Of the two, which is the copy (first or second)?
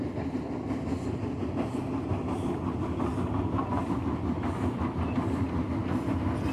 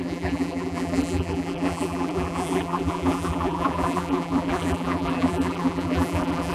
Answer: second